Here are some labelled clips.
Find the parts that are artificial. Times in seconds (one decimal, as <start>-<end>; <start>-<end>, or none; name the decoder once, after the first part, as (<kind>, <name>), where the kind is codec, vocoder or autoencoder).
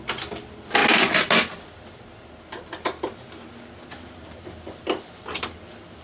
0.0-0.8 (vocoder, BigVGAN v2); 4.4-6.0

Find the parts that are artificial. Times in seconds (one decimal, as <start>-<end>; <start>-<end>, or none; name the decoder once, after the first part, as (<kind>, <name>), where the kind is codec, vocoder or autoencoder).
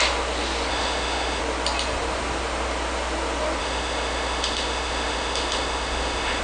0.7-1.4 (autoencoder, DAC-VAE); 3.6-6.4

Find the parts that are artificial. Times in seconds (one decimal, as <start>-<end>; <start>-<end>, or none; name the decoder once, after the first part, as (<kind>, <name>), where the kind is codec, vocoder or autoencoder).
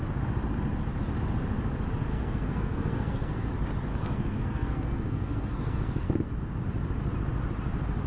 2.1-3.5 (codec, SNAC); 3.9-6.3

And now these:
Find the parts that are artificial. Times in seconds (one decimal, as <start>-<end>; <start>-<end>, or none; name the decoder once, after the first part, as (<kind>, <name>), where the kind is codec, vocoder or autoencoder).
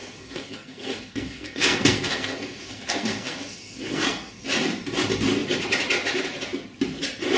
0.0-4.4 (codec, SNAC)